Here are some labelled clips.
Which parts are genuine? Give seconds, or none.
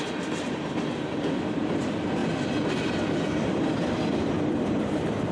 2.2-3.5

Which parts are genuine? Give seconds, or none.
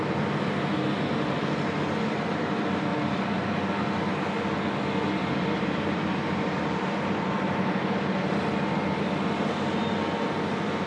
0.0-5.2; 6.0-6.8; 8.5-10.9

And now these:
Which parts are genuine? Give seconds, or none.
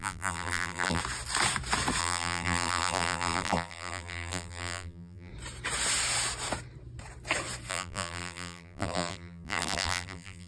1.0-2.0; 5.3-7.7